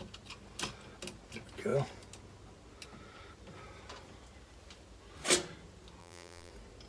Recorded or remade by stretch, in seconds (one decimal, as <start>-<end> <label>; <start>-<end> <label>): 0.0-6.0 recorded; 6.0-6.5 remade; 6.5-6.9 recorded